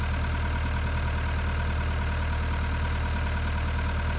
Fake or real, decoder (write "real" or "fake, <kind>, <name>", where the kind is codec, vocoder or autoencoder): real